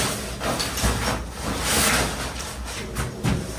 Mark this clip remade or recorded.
recorded